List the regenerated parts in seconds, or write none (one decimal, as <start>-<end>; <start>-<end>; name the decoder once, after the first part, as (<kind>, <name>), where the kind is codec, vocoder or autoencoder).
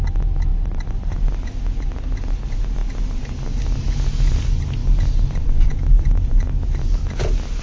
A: none